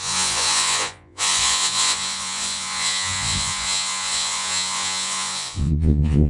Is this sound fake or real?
fake